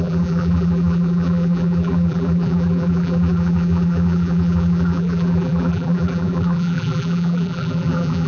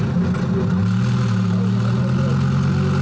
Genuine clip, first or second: second